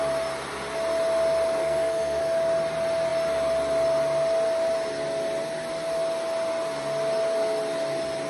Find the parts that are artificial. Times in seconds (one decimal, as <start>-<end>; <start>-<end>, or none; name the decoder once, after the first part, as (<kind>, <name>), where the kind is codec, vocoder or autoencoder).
1.6-2.2 (codec, SNAC)